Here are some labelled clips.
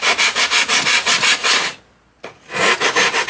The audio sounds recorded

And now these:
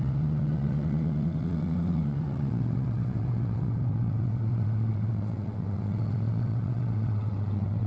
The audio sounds remade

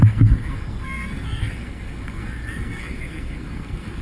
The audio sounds remade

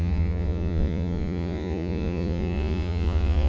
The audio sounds remade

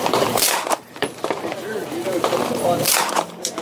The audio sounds remade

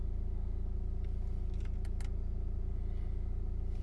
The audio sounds recorded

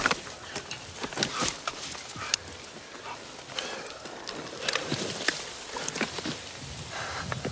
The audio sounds recorded